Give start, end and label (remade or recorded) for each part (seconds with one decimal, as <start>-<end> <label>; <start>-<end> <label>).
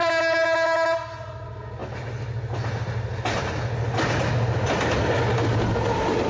0.0-6.3 recorded